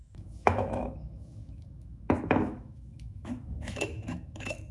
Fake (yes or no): yes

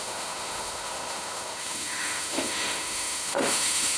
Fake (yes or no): yes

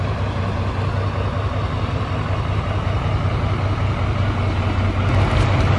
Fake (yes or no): no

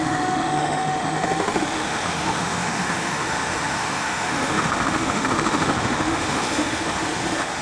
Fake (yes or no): yes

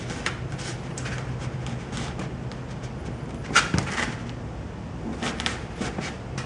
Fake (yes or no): no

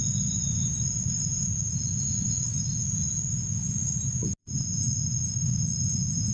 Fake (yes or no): no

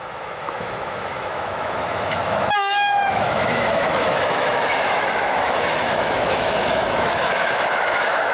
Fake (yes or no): yes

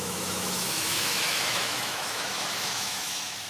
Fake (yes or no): yes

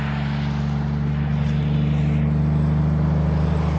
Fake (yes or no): no